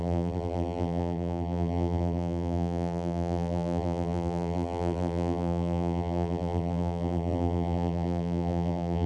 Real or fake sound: fake